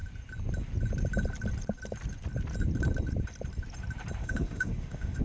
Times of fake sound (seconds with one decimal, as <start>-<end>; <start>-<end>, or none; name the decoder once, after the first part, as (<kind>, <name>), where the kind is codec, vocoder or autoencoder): 4.2-5.2 (autoencoder, DAC-VAE)